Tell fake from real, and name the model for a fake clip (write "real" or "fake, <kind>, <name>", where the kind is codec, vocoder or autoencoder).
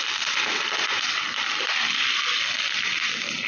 real